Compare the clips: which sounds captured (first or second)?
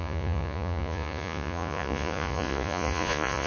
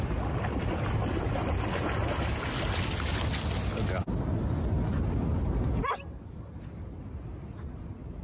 second